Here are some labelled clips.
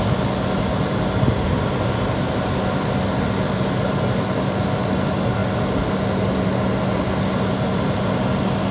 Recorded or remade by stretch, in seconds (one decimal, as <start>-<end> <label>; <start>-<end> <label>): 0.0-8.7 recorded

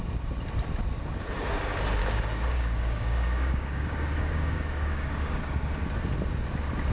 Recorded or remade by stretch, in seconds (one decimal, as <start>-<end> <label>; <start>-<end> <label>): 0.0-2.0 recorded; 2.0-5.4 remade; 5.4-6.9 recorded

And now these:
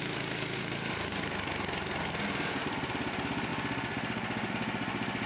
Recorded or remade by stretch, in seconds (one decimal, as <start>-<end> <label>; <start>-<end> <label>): 0.0-5.3 recorded